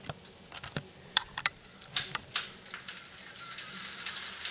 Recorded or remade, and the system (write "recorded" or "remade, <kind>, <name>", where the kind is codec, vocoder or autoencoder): remade, vocoder, BigVGAN v2